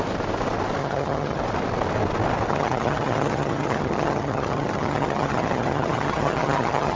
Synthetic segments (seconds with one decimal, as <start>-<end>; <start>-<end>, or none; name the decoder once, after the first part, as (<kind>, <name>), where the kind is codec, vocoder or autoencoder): 0.8-1.4 (vocoder, HiFi-GAN); 2.5-7.0